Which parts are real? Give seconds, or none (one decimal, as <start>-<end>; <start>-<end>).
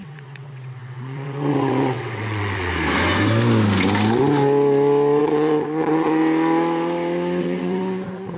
2.7-5.2; 6.2-7.4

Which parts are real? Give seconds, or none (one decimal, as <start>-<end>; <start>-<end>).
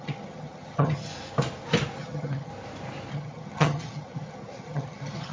1.1-2.0; 2.5-3.1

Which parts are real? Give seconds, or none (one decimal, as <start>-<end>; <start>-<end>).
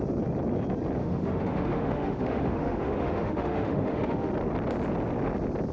0.0-1.0; 4.3-5.7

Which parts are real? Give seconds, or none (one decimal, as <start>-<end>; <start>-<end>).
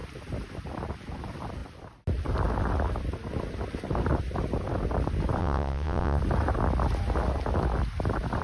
0.0-5.4; 6.2-8.4